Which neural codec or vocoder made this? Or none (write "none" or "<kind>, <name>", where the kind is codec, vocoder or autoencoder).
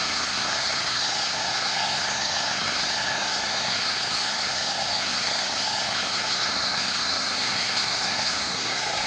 codec, SNAC